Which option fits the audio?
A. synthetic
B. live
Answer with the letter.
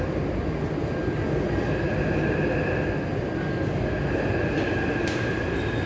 B